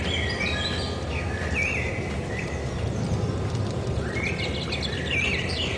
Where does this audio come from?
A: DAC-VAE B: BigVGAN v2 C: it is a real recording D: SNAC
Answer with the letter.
C